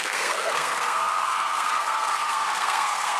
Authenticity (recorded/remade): remade